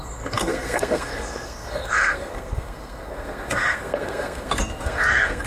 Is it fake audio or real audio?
fake